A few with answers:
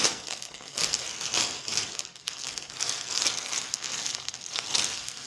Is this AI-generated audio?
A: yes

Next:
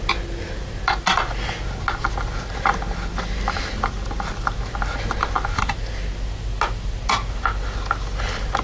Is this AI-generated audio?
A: no